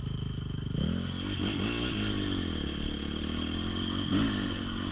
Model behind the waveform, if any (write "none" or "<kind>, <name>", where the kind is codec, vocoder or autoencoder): none